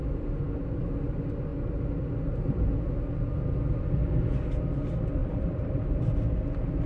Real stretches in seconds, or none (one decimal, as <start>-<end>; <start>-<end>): 0.0-5.2; 6.0-6.9